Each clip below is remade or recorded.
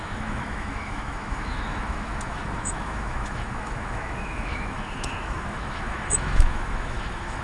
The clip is remade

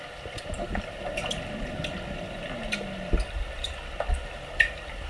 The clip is recorded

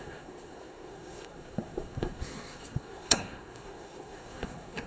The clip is remade